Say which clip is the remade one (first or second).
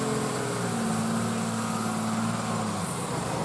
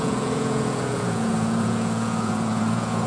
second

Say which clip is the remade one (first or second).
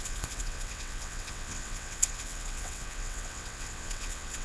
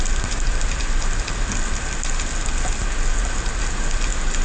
first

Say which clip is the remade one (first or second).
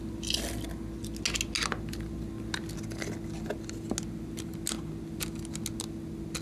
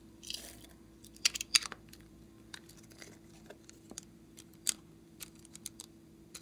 second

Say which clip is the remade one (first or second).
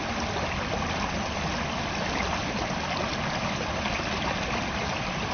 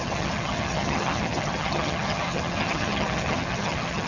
second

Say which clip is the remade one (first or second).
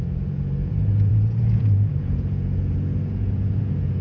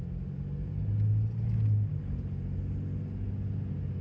first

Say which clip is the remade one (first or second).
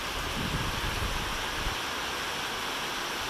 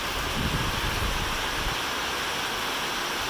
first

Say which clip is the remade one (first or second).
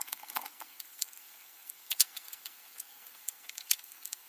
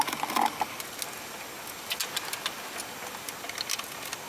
first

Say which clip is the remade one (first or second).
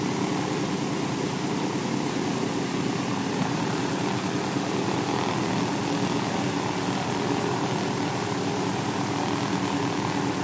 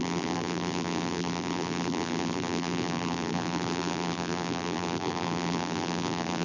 second